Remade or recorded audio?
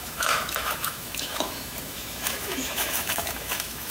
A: remade